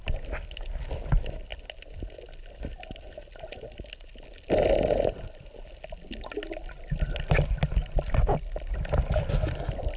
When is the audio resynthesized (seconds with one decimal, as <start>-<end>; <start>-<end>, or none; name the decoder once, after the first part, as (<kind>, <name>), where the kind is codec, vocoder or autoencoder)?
none